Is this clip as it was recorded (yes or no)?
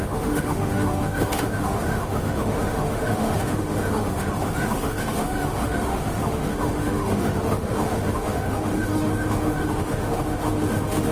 no